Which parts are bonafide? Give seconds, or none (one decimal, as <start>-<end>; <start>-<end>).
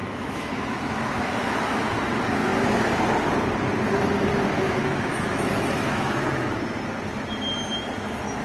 1.9-4.8; 6.1-8.4